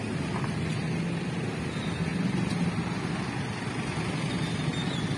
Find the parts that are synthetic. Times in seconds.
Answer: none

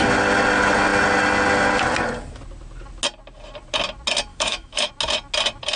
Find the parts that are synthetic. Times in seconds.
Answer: 4.3-4.9 (autoencoder, DAC-VAE)

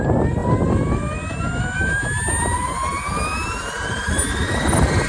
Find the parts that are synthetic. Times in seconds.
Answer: none

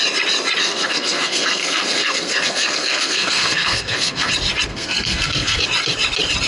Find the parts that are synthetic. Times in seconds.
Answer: 0.6-4.3 (codec, SNAC); 4.7-5.6

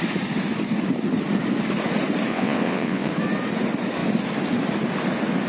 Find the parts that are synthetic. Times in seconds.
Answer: 2.3-3.1 (vocoder, WaveNeXt)

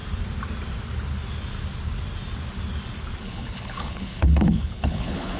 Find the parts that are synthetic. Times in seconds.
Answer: 3.2-5.4 (codec, HILCodec)